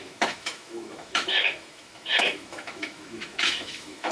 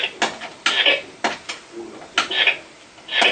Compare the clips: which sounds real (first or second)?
second